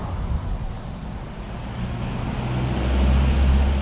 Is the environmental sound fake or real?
real